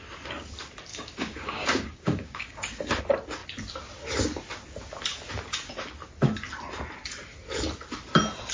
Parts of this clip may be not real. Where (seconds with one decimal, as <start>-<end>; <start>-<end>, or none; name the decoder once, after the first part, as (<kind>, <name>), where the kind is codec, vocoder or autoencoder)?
0.9-3.0 (codec, DAC)